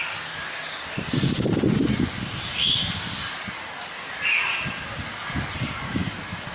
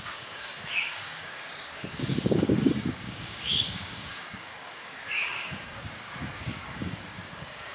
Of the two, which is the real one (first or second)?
first